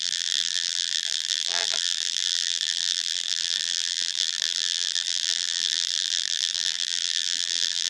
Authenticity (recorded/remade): remade